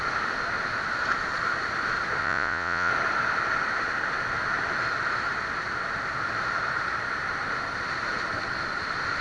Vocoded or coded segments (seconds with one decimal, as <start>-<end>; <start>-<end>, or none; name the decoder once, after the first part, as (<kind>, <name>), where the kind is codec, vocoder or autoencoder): 2.2-2.9 (vocoder, Vocos)